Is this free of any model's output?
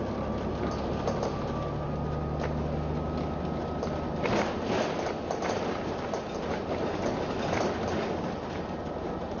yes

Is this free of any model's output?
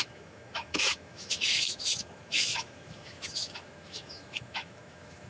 no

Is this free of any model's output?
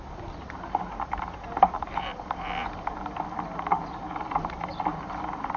yes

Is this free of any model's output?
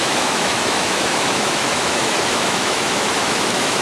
no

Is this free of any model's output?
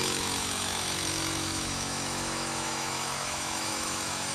no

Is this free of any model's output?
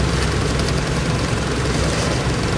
yes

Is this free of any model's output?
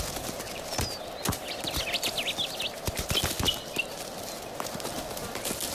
yes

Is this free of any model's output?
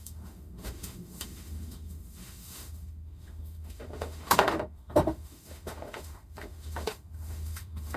no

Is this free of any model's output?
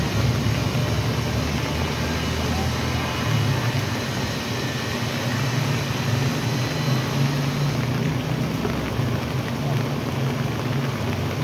yes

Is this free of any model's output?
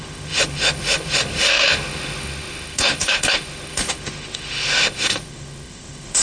no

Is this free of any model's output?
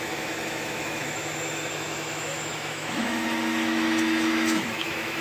no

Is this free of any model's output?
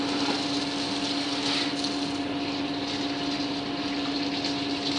yes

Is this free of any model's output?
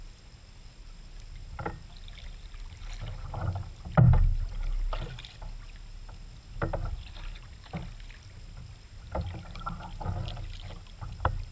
yes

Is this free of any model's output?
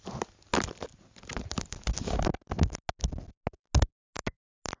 yes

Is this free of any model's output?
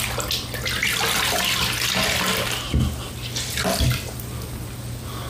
yes